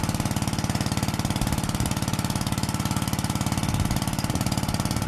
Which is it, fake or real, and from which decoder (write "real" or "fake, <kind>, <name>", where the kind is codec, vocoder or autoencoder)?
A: real